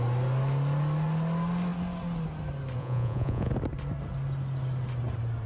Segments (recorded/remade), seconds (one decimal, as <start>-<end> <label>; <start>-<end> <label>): 0.0-2.8 recorded; 2.8-3.5 remade; 3.5-5.5 recorded